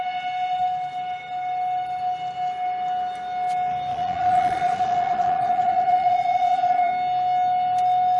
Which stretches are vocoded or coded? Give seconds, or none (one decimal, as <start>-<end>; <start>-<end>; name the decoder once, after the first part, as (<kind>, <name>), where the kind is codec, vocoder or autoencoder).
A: 3.9-6.9 (vocoder, Vocos)